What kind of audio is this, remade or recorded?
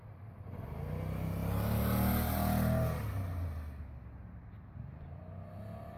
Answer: recorded